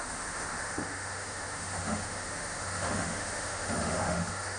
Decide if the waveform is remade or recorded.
remade